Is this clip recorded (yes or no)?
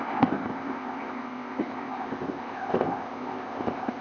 no